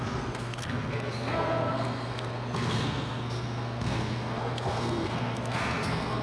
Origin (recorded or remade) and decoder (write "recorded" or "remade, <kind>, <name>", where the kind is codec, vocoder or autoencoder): remade, codec, SNAC